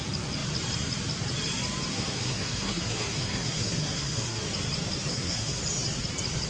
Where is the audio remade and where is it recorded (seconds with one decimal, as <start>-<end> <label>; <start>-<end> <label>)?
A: 0.0-1.9 recorded; 1.9-4.4 remade; 4.4-5.1 recorded; 5.1-5.6 remade; 5.6-6.5 recorded